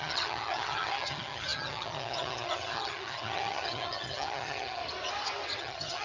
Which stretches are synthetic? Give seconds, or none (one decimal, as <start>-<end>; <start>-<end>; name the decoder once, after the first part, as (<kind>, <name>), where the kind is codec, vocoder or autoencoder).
0.0-4.8 (vocoder, HiFi-GAN); 5.6-6.0